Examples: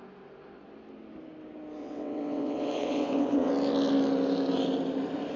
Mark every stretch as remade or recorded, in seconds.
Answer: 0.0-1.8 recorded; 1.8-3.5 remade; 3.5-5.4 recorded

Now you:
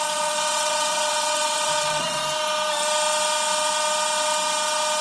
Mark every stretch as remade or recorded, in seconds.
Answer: 0.0-2.2 remade; 2.2-5.0 recorded

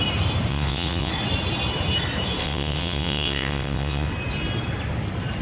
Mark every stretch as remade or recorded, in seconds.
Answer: 0.0-0.5 recorded; 0.5-1.1 remade; 1.1-2.4 recorded; 2.4-4.1 remade; 4.1-5.4 recorded

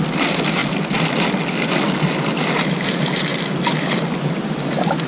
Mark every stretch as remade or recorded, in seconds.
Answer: 0.0-5.1 recorded

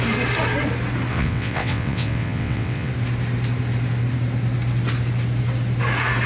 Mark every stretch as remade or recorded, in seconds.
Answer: 0.0-1.1 recorded; 1.1-2.9 remade; 2.9-6.3 recorded